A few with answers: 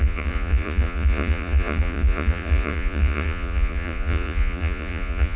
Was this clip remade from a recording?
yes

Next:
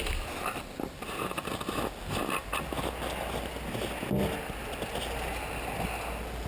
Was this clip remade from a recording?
no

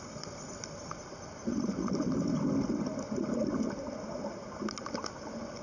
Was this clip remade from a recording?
no